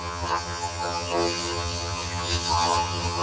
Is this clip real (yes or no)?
no